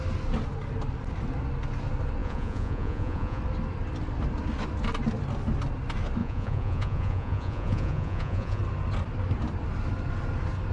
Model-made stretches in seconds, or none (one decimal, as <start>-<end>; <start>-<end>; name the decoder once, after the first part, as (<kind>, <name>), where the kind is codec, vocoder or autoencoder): 2.2-3.4 (vocoder, Vocos); 6.2-8.6